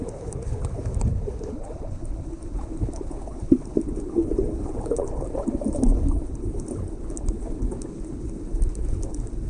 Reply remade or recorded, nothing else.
remade